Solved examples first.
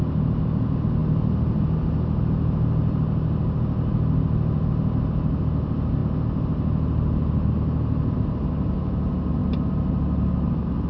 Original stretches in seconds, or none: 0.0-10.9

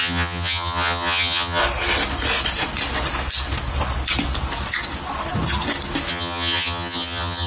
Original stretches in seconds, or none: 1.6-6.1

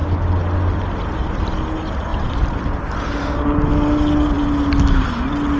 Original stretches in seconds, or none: 0.0-5.6